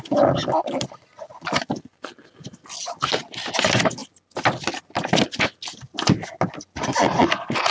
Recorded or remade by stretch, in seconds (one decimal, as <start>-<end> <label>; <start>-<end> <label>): 0.0-7.7 recorded